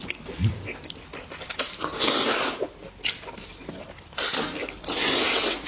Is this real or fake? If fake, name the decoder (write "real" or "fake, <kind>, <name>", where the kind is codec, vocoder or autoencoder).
real